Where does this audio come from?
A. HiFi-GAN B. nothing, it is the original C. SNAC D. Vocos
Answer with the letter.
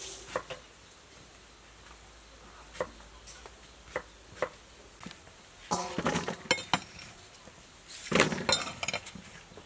B